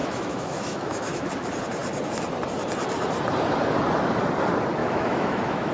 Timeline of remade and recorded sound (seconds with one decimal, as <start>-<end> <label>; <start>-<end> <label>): 0.0-1.3 remade; 1.3-4.8 recorded; 4.8-5.7 remade